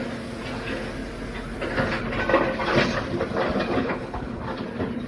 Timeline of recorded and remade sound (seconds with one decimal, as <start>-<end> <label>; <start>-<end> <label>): 0.0-3.8 recorded; 3.8-4.4 remade; 4.4-5.1 recorded